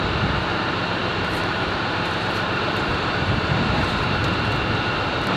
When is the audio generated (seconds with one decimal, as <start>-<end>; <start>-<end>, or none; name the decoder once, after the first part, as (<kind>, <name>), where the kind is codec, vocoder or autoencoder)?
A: 1.0-4.2 (vocoder, BigVGAN v2)